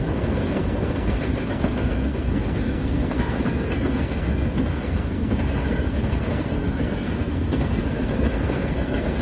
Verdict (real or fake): fake